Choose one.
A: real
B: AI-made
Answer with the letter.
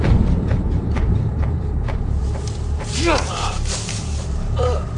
B